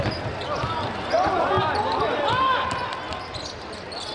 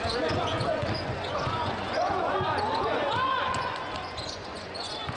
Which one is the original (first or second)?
first